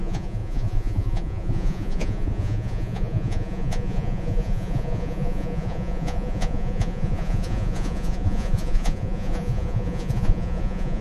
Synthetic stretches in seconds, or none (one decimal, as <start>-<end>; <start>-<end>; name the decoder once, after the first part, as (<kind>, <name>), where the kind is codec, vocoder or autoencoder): 0.0-11.0 (vocoder, Vocos)